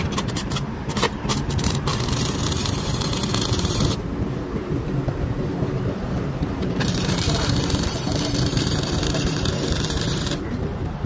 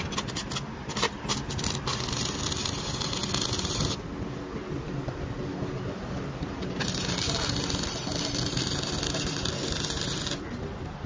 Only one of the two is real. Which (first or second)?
second